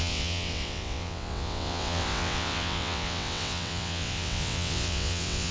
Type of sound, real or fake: fake